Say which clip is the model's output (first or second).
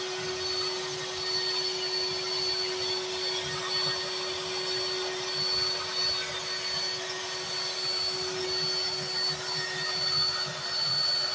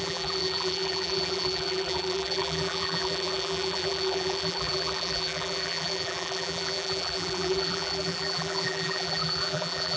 second